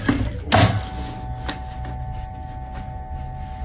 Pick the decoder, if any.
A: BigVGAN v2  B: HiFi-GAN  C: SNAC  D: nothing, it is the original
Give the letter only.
D